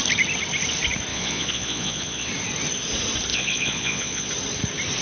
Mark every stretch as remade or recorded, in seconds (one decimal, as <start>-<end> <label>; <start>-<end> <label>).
0.0-1.1 recorded; 1.1-2.3 remade; 2.3-3.3 recorded; 3.3-4.3 remade; 4.3-5.0 recorded